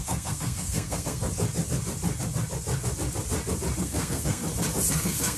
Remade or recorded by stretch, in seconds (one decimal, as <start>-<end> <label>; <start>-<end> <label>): 0.0-1.2 remade; 1.2-3.8 recorded; 3.8-4.4 remade; 4.4-4.9 recorded; 4.9-5.4 remade